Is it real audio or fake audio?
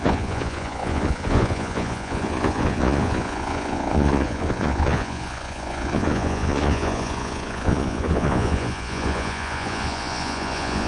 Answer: fake